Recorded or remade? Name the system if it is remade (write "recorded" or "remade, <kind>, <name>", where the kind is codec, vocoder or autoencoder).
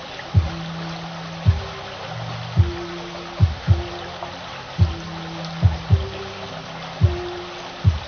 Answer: recorded